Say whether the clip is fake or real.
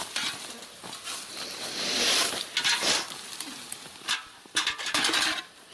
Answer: real